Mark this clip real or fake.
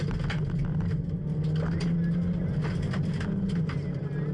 real